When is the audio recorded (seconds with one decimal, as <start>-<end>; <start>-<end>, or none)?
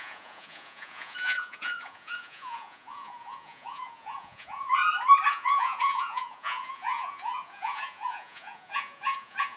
4.8-5.3